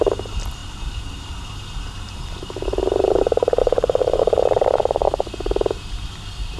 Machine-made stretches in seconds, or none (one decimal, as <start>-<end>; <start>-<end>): 3.6-4.2